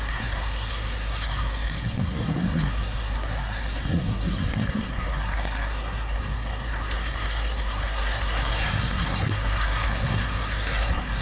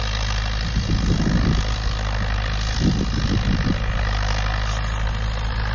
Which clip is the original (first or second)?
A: second